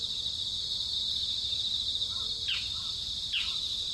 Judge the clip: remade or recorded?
recorded